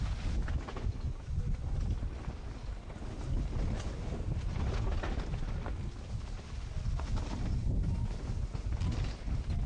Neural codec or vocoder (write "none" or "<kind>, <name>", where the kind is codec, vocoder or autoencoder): none